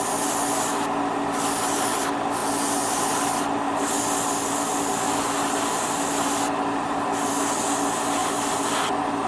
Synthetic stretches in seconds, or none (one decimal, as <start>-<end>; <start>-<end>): none